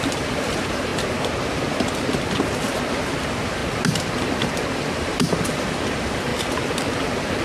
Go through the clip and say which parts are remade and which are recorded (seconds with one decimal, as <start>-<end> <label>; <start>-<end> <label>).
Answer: 0.0-0.9 remade; 0.9-3.1 recorded; 3.1-3.6 remade; 3.6-4.9 recorded; 4.9-6.3 remade; 6.3-7.4 recorded